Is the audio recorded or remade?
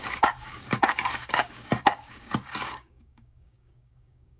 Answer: remade